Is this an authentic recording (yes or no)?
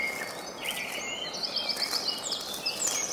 yes